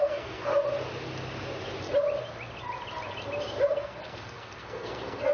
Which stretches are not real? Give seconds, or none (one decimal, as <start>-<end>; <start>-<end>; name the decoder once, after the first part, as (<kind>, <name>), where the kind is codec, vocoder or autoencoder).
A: 0.0-0.5 (codec, SNAC); 3.7-5.3